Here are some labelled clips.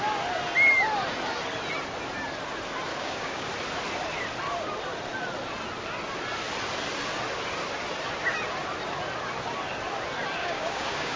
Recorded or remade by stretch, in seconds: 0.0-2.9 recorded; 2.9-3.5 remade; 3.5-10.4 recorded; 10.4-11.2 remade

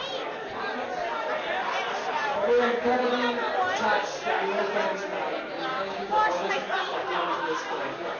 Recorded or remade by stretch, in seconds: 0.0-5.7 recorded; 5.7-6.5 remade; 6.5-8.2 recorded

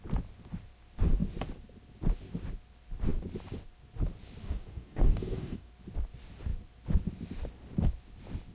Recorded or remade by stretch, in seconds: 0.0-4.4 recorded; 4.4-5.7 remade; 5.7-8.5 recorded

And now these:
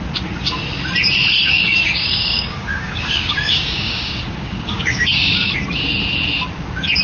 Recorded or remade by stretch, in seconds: 0.0-1.4 recorded; 1.4-5.5 remade; 5.5-7.0 recorded